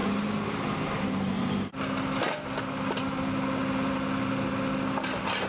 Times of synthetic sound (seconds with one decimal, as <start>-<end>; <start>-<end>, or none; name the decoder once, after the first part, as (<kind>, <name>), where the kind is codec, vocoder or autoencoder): none